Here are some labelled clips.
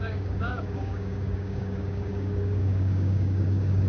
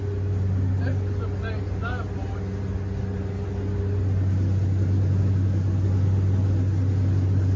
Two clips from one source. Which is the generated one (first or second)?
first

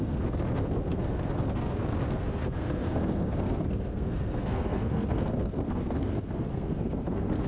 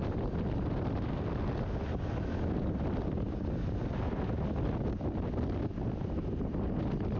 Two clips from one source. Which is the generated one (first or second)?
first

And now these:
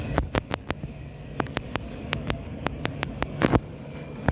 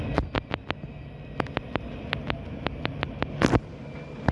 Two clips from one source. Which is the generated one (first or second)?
first